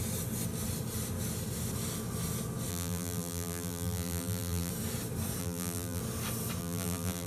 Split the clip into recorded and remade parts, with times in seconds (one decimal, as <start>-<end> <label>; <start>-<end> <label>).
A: 0.0-2.7 recorded; 2.7-4.7 remade; 4.7-5.4 recorded; 5.4-6.0 remade; 6.0-6.6 recorded; 6.6-7.3 remade